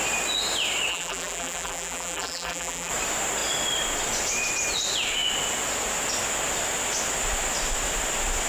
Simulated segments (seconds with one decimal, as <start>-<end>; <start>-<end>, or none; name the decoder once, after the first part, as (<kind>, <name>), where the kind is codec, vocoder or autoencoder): 0.9-2.9 (vocoder, BigVGAN v2)